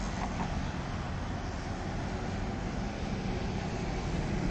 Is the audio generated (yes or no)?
no